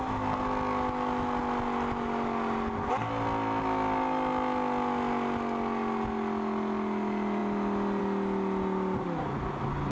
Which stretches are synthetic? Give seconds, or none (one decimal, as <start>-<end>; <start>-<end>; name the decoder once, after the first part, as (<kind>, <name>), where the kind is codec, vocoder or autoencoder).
none